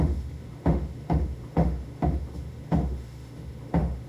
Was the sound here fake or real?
fake